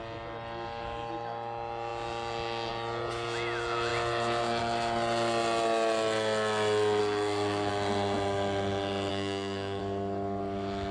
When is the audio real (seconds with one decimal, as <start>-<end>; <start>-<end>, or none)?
0.0-7.0; 7.7-9.1; 9.8-10.9